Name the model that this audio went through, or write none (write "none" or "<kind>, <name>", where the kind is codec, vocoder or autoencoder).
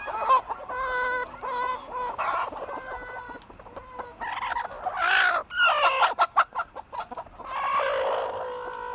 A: none